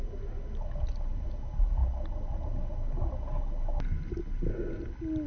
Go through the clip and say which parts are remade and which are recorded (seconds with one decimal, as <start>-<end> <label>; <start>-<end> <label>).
0.0-5.3 recorded